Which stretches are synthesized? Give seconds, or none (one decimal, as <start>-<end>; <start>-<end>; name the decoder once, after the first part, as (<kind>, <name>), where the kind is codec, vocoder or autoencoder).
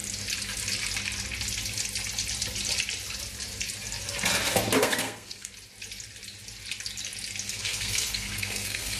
4.8-5.5 (codec, SNAC); 7.5-9.0